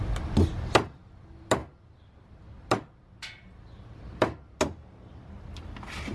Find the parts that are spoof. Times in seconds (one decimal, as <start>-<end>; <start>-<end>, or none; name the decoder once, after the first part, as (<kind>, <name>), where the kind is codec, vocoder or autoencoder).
none

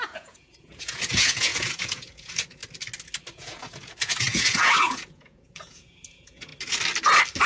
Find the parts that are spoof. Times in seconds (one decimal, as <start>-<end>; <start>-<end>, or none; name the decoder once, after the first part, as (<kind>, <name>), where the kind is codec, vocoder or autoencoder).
0.0-2.6 (vocoder, Vocos); 3.3-6.5

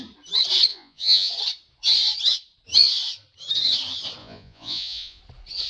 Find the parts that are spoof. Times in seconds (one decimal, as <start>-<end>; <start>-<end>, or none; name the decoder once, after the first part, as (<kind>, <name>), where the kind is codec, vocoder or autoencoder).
0.7-1.3 (vocoder, Vocos); 4.2-5.2

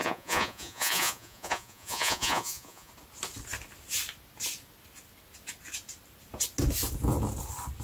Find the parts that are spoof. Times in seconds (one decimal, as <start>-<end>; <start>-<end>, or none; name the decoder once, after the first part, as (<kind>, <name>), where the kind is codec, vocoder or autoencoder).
0.0-2.9 (vocoder, Vocos)

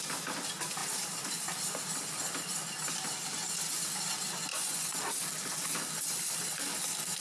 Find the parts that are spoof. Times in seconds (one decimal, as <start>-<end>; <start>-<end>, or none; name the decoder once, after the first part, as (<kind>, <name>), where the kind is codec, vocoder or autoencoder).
4.5-5.0 (vocoder, Vocos)

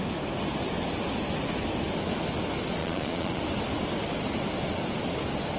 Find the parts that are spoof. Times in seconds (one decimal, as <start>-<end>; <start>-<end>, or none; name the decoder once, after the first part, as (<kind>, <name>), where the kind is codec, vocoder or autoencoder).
2.8-3.4 (vocoder, Vocos)

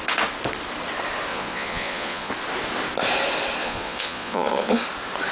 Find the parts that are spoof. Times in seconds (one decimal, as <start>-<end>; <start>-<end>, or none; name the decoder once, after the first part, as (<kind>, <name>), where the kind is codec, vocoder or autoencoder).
1.3-2.3 (vocoder, Vocos); 3.6-4.8